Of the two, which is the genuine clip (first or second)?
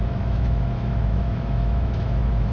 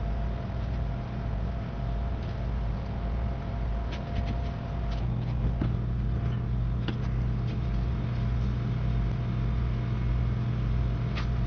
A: second